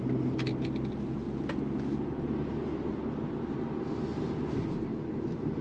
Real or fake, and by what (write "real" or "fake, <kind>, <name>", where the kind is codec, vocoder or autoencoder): real